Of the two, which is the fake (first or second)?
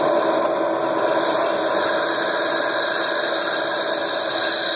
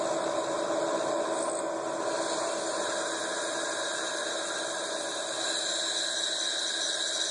first